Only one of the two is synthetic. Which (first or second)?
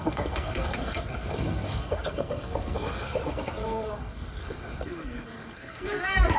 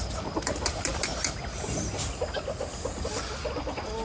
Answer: first